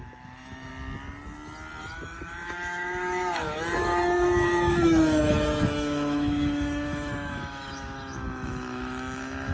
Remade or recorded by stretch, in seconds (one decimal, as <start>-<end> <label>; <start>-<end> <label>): 0.0-0.7 remade; 0.7-1.8 recorded; 1.8-9.5 remade